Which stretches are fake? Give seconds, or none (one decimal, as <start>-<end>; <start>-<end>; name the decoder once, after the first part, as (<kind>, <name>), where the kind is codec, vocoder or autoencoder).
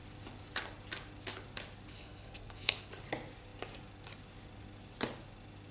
1.9-2.9 (codec, SNAC)